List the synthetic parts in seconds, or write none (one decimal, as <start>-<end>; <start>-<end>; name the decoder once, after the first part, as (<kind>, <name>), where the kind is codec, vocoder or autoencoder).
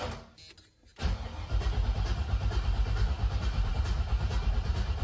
none